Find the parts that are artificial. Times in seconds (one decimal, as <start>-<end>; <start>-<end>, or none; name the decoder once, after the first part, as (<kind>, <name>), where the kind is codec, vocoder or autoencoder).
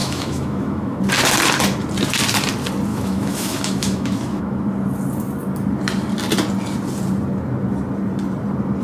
0.0-1.0 (autoencoder, DAC-VAE); 2.9-4.6